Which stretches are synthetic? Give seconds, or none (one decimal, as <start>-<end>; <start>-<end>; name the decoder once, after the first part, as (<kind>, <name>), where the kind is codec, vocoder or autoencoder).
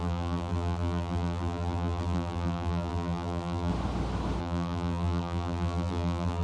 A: 0.0-3.7 (vocoder, BigVGAN v2); 4.4-6.4